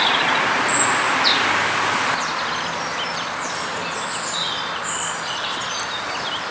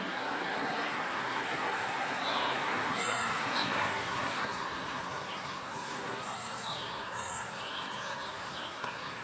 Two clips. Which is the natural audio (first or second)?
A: first